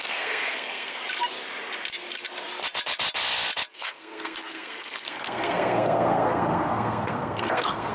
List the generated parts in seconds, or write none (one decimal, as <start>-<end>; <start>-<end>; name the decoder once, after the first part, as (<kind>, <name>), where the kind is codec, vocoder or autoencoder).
0.0-1.0 (codec, SNAC); 3.7-7.9

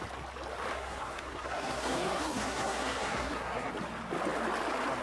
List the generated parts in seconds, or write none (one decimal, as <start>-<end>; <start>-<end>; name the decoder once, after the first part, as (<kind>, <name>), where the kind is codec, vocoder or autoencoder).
0.7-3.7 (codec, SNAC)

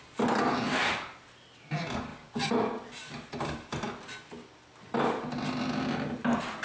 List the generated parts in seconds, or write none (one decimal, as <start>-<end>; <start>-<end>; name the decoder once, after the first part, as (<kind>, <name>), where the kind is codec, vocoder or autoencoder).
none

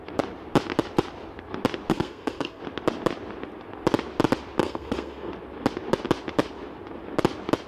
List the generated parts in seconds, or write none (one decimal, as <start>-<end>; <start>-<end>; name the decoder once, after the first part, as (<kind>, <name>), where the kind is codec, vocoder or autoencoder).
1.9-2.6 (codec, SNAC); 4.6-5.3

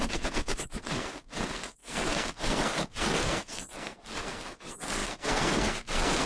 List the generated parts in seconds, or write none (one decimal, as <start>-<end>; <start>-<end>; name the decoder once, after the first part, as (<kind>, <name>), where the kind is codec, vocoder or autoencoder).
0.0-6.3 (codec, SNAC)

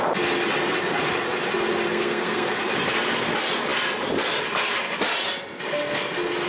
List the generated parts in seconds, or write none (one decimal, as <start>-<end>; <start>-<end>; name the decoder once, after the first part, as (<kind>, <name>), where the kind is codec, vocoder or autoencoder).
1.9-2.5 (codec, SNAC)

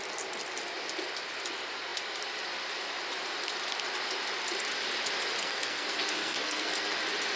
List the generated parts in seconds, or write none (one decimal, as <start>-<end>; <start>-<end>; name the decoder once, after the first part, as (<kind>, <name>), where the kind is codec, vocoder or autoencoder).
5.4-7.0 (codec, SNAC)